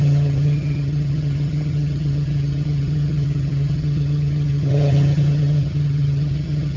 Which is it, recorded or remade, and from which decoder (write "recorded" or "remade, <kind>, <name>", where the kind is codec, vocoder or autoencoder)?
remade, vocoder, HiFi-GAN